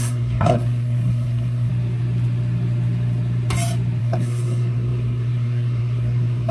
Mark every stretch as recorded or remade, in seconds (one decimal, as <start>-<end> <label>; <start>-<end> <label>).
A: 0.0-1.7 remade; 1.7-4.0 recorded; 4.0-6.5 remade